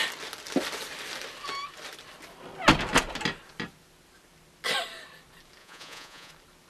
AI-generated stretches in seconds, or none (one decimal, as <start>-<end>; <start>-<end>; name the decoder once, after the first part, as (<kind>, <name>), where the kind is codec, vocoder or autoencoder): 5.6-6.3 (vocoder, Vocos)